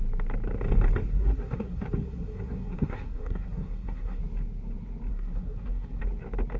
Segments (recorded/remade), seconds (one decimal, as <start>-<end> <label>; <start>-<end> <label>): 0.0-1.1 recorded; 1.1-4.2 remade; 4.2-5.1 recorded; 5.1-6.0 remade; 6.0-6.6 recorded